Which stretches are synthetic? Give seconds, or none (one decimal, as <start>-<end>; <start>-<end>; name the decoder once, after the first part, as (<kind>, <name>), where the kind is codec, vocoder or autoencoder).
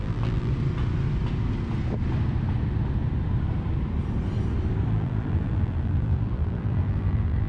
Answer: 0.0-0.5 (vocoder, BigVGAN v2); 4.9-7.5